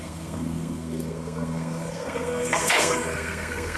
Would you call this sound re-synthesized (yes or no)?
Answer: yes